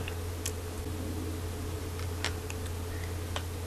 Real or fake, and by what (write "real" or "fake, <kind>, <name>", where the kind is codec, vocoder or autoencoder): real